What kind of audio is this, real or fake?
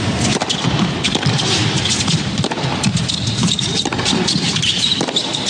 real